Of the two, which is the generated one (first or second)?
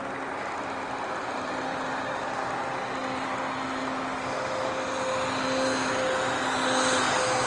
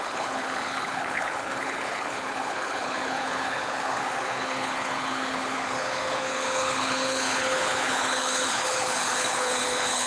second